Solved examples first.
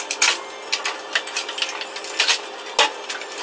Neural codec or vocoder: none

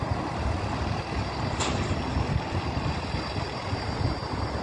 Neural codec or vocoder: none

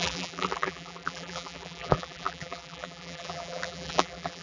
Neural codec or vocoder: vocoder, BigVGAN v2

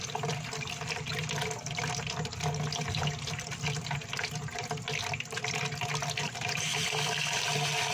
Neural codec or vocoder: none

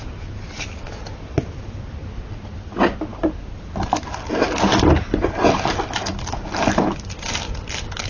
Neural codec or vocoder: none